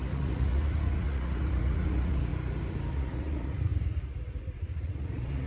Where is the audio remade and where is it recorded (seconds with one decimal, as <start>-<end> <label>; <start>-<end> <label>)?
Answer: 0.0-2.3 remade; 2.3-2.9 recorded; 2.9-3.7 remade; 3.7-4.4 recorded; 4.4-5.5 remade